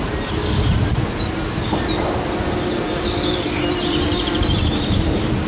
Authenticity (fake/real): real